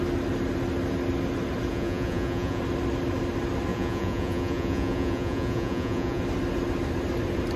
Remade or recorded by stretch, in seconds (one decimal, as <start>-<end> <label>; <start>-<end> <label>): 0.0-1.7 recorded; 1.7-2.6 remade; 2.6-3.7 recorded; 3.7-6.2 remade; 6.2-7.6 recorded